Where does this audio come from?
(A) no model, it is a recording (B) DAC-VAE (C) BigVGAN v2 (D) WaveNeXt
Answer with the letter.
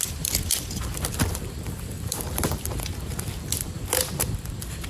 C